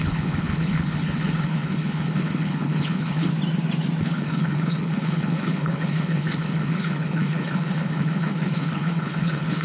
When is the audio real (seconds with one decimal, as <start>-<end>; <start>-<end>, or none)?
3.3-4.0